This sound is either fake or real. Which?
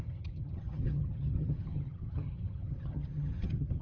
fake